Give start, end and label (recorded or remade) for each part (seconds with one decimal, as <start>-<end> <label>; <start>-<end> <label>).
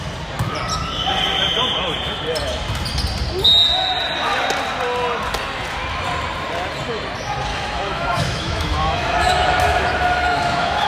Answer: 0.0-7.5 recorded; 7.5-10.9 remade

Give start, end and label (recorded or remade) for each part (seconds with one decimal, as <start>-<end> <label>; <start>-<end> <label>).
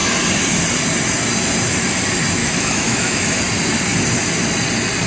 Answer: 0.0-2.4 recorded; 2.4-3.4 remade; 3.4-5.1 recorded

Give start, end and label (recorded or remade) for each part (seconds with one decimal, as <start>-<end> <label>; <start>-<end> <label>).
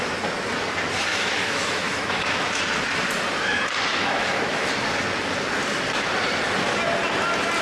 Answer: 0.0-1.1 recorded; 1.1-2.6 remade; 2.6-3.9 recorded; 3.9-4.7 remade; 4.7-7.6 recorded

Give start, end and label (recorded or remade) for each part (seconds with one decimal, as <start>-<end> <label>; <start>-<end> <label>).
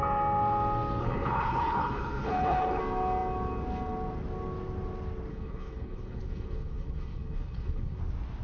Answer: 0.0-1.0 recorded; 1.0-2.8 remade; 2.8-5.3 recorded; 5.3-8.0 remade; 8.0-8.4 recorded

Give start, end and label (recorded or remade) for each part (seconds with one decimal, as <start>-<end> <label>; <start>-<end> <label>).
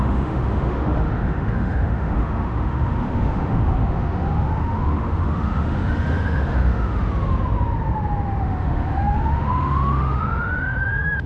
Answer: 0.0-7.0 remade; 7.0-8.4 recorded; 8.4-11.3 remade